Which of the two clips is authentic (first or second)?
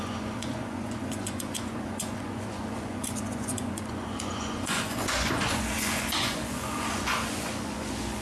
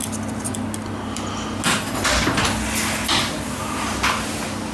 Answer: second